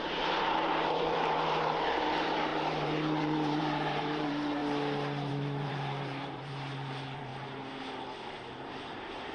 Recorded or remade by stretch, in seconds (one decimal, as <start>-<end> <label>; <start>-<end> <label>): 0.0-4.6 remade; 4.6-5.3 recorded; 5.3-7.3 remade; 7.3-8.3 recorded; 8.3-9.3 remade